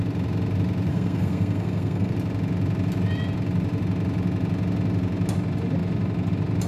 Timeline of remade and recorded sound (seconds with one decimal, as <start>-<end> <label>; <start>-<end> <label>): 0.0-0.9 recorded; 0.9-2.1 remade; 2.1-6.7 recorded